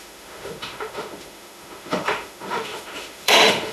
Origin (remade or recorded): remade